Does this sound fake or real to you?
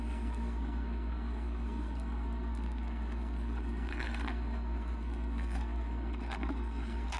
fake